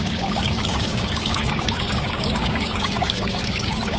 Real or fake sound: fake